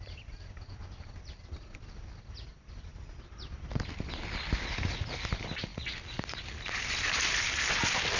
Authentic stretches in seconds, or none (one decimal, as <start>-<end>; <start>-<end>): 0.0-8.2

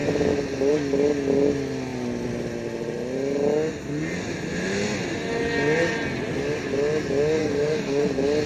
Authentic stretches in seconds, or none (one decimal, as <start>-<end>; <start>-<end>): 0.0-7.4; 8.1-8.5

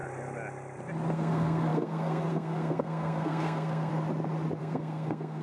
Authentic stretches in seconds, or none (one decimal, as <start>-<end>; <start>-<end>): 0.0-1.1; 3.9-4.6

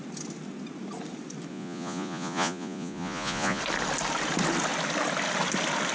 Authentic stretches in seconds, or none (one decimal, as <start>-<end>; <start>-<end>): 0.0-1.5; 3.6-5.9

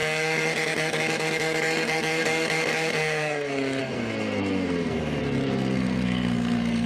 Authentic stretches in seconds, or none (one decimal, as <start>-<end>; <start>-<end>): none

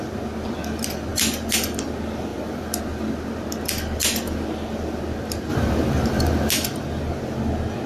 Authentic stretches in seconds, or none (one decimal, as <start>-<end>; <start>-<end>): 0.0-2.3; 2.8-5.5; 6.5-7.9

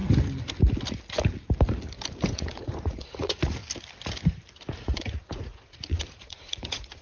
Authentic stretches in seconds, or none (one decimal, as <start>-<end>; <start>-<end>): 0.0-2.3; 3.6-4.8